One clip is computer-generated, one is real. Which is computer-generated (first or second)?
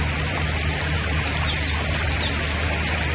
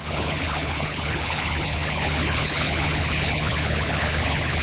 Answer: second